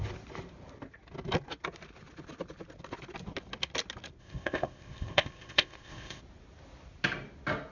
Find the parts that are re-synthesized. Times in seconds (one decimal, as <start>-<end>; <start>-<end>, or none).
4.2-6.2